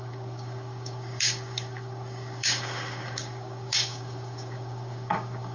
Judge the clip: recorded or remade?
remade